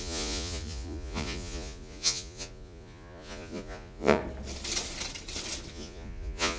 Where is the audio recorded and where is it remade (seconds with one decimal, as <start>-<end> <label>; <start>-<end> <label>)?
0.0-4.2 remade; 4.2-5.7 recorded; 5.7-6.6 remade